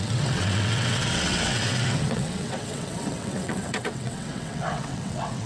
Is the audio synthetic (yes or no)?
yes